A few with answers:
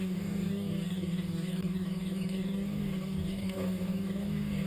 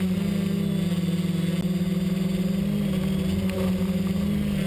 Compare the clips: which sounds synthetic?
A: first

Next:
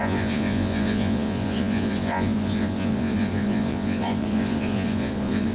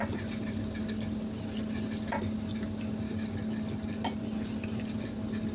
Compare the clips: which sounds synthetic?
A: first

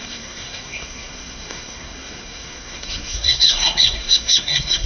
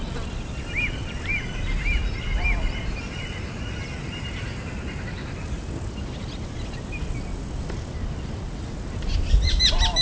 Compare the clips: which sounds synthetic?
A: first